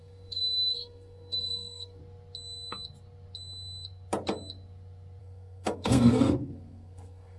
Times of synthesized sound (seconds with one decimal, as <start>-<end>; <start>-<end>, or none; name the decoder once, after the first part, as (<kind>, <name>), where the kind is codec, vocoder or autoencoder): 0.0-2.0 (codec, SNAC); 5.2-7.4